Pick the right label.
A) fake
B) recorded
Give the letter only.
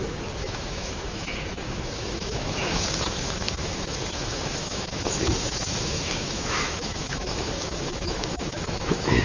A